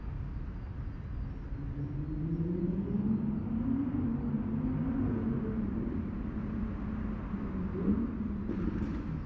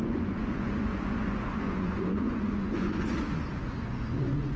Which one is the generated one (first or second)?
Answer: second